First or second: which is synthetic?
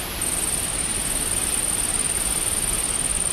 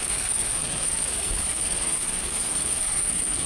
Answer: second